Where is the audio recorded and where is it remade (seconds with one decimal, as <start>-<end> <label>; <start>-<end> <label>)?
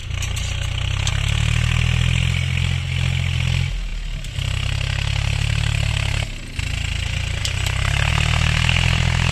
0.0-3.9 recorded; 3.9-5.9 remade; 5.9-7.4 recorded; 7.4-8.1 remade; 8.1-9.3 recorded